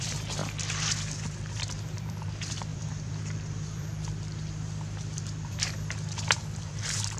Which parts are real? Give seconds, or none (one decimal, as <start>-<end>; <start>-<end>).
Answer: 0.4-1.2

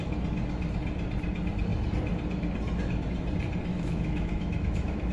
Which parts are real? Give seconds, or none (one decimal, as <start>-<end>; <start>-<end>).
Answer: 0.0-3.7

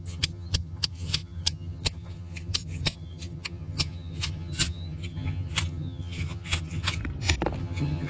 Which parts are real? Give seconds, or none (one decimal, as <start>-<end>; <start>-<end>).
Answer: 7.0-7.6

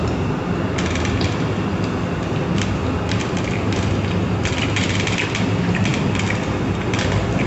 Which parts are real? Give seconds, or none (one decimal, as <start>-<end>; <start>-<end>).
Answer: 0.0-7.5

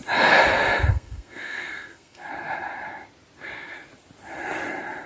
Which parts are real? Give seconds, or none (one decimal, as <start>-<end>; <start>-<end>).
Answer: 0.0-0.9; 2.2-5.1

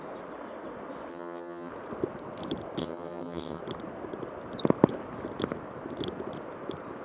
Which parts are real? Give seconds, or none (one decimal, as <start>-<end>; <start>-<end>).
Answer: 0.0-1.1; 1.7-2.8; 3.6-7.0

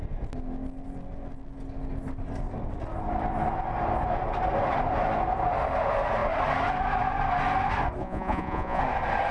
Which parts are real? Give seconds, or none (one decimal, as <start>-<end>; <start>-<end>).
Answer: 0.0-8.0; 8.8-9.3

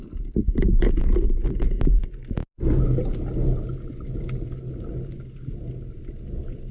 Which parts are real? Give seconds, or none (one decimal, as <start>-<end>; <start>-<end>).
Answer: 0.0-6.7